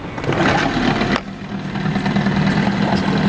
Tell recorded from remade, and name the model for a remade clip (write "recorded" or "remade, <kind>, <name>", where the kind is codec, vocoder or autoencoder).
recorded